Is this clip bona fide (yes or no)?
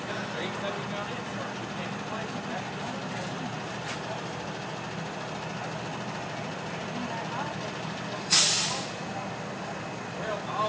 yes